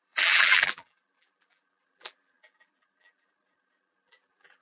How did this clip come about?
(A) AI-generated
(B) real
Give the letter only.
A